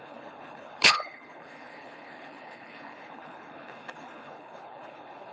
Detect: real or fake fake